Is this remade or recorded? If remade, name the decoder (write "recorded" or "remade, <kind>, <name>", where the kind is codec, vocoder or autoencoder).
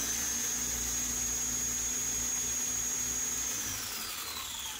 recorded